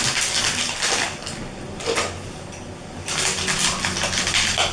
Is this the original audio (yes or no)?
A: yes